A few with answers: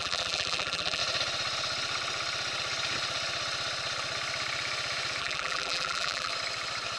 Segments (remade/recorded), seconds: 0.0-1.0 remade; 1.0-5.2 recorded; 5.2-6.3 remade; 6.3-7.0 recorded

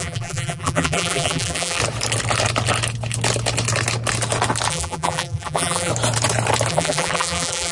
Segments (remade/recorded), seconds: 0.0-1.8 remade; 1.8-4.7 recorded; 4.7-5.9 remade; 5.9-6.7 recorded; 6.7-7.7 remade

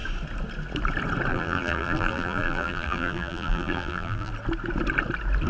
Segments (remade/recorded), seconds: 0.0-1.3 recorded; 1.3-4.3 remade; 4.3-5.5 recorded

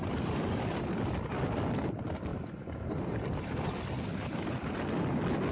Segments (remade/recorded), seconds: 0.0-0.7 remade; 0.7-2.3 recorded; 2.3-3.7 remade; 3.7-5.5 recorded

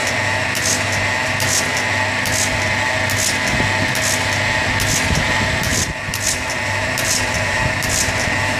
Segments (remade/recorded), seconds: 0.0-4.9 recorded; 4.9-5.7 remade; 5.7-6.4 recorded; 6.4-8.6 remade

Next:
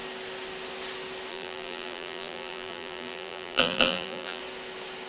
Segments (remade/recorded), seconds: 0.0-1.3 recorded; 1.3-4.4 remade; 4.4-5.1 recorded